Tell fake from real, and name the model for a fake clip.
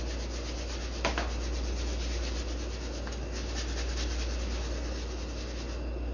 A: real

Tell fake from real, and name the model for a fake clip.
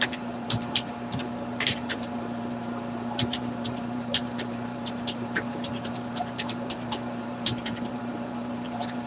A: fake, vocoder, BigVGAN v2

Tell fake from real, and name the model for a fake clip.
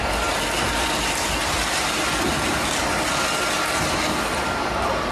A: real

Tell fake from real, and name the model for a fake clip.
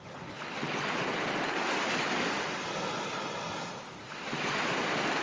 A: real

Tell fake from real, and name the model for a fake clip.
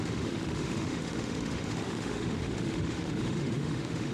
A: fake, autoencoder, DAC-VAE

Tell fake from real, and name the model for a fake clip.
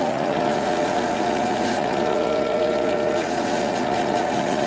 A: fake, vocoder, Vocos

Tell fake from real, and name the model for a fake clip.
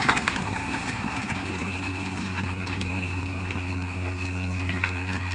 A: fake, codec, SNAC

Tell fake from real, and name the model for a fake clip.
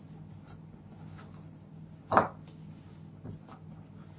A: real